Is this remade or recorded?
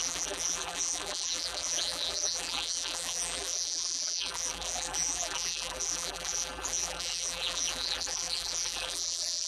remade